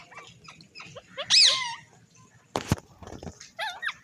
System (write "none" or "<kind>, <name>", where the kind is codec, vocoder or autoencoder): none